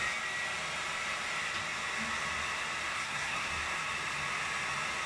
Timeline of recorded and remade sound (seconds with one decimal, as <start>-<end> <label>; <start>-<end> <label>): 0.0-2.9 recorded; 2.9-3.5 remade; 3.5-5.1 recorded